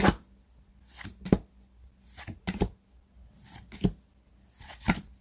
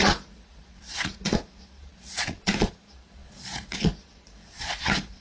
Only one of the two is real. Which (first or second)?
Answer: first